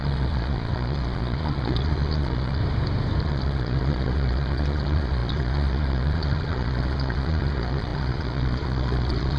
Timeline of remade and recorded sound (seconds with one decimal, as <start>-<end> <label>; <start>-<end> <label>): 0.0-2.6 remade; 2.6-3.2 recorded; 3.2-9.4 remade